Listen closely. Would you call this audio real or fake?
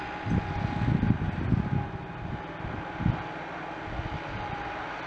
real